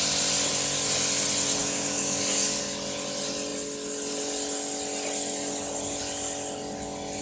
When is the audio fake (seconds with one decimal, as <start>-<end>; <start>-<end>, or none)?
1.6-2.6